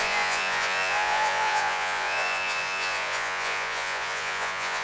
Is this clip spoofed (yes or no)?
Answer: yes